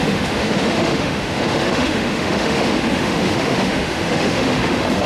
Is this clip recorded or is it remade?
remade